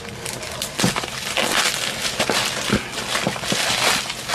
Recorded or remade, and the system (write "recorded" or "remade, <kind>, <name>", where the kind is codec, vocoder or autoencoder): recorded